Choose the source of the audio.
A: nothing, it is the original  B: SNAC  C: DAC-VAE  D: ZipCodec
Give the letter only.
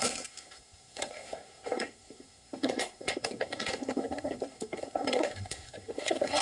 B